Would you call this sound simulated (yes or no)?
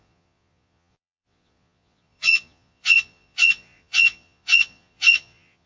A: yes